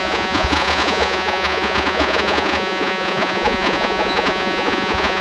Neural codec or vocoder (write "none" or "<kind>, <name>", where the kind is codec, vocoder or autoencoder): vocoder, Vocos